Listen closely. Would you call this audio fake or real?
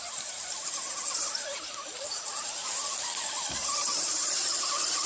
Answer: real